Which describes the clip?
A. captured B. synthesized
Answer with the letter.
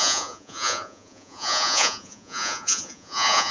B